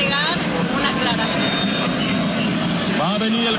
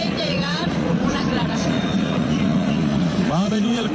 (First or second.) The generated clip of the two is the second